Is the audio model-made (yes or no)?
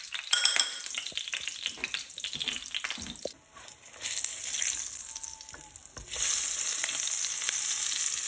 no